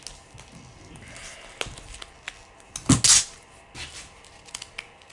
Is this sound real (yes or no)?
yes